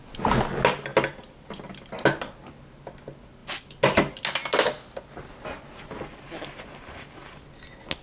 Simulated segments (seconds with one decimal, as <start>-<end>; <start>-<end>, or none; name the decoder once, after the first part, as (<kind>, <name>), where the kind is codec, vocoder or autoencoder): none